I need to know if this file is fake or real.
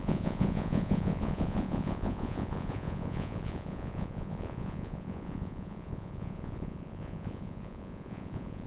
fake